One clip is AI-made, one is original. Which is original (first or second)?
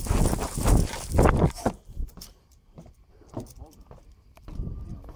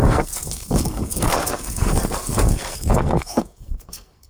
first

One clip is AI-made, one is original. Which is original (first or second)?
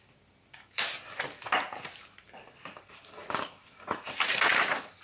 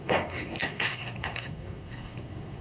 first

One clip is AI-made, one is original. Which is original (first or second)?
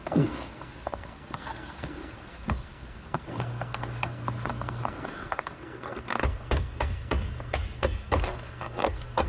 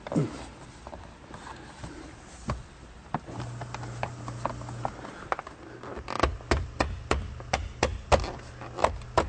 second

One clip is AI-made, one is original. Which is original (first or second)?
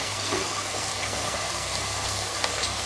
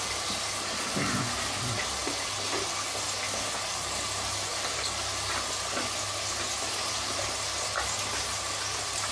second